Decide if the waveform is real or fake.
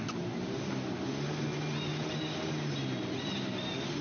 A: real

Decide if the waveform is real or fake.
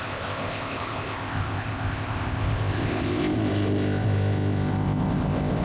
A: fake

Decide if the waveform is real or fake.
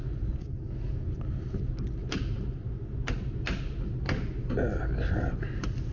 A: real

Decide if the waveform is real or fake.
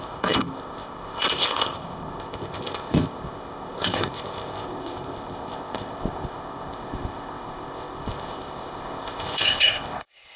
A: fake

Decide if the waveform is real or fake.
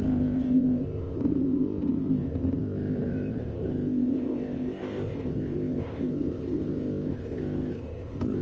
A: fake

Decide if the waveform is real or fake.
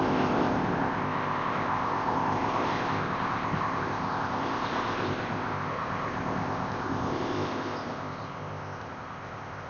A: fake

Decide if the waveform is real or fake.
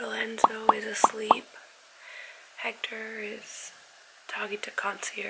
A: real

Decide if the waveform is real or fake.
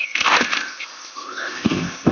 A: fake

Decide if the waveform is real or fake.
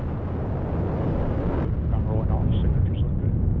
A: real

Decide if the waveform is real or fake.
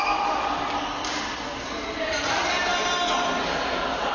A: real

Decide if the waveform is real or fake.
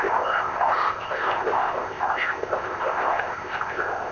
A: fake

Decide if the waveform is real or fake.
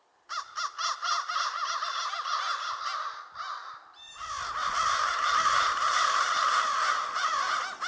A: real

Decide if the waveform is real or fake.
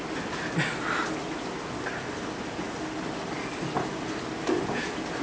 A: real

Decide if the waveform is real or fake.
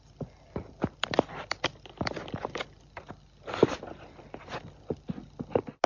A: real